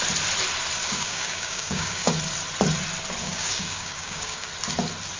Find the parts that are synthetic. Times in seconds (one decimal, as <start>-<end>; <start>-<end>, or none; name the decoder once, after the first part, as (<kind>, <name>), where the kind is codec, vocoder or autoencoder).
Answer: 0.8-2.1 (codec, DAC); 3.2-4.5